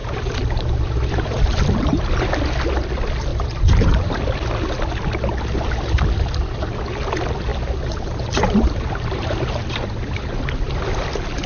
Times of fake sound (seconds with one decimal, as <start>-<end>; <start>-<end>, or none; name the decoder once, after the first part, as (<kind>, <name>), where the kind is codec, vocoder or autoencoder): 0.0-1.6 (vocoder, BigVGAN v2); 3.3-4.2; 7.5-10.4